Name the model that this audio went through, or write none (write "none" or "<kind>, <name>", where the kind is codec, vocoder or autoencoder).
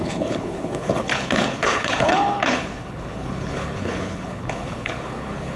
codec, HILCodec